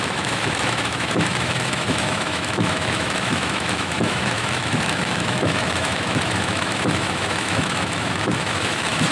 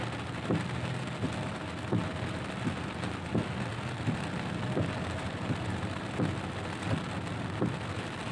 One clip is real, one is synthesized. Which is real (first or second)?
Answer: second